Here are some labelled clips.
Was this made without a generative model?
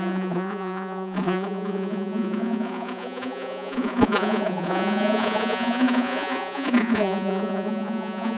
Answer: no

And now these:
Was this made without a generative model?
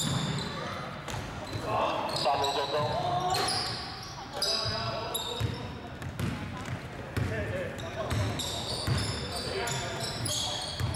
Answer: yes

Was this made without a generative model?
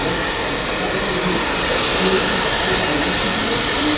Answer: yes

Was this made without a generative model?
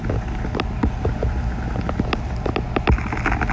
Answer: yes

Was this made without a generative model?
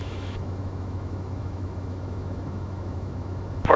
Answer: no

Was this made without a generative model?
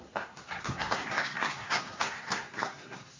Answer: no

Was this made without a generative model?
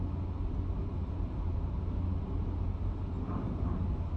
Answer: yes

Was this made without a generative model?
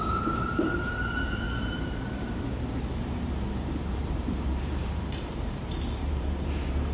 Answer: no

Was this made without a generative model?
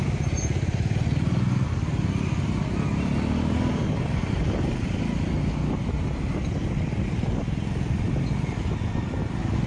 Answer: yes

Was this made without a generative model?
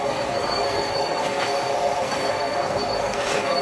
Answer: no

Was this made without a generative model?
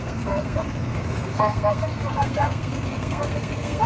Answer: no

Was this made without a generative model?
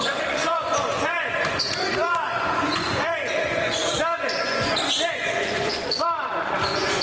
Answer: no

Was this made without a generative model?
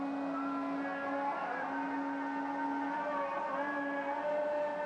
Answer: yes